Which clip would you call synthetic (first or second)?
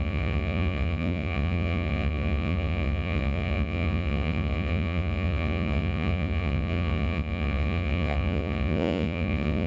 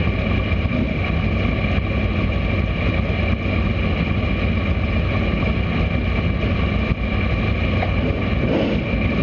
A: first